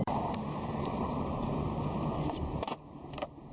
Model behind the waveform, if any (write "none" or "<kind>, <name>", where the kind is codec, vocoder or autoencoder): vocoder, BigVGAN v2